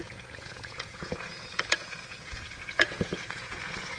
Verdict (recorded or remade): remade